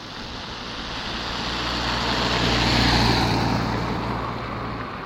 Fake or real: real